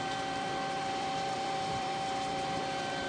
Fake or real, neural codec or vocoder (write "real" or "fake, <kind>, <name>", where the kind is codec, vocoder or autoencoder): fake, vocoder, BigVGAN v2